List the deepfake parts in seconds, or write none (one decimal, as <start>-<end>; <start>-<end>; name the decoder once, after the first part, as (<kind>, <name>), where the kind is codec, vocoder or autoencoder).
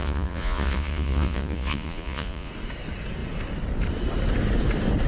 0.0-2.5 (vocoder, Vocos)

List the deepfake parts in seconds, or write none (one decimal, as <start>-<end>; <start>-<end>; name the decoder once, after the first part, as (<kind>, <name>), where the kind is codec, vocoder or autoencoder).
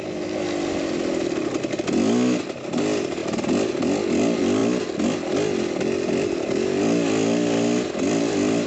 none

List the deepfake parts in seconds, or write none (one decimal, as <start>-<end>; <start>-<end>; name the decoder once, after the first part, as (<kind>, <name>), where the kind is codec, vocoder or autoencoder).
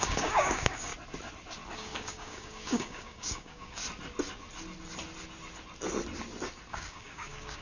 0.0-0.9 (codec, DAC); 1.7-3.8; 6.7-7.6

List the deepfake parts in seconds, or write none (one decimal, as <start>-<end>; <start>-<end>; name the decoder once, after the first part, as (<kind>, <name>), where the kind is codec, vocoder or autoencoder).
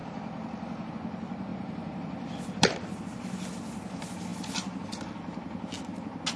0.0-0.9 (vocoder, BigVGAN v2); 1.5-3.0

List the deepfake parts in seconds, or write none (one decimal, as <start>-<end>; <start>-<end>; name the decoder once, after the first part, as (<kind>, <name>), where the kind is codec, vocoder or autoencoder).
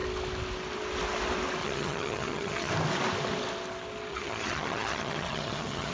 1.6-2.7 (vocoder, HiFi-GAN); 4.1-5.9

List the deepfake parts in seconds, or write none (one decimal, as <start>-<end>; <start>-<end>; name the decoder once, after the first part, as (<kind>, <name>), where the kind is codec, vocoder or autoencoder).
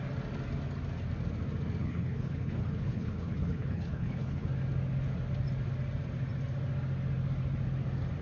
1.8-4.5 (codec, HILCodec)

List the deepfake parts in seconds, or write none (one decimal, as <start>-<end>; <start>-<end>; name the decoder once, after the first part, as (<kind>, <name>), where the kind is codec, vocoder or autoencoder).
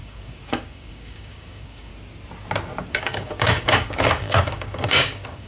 0.0-1.9 (codec, DAC); 2.9-5.5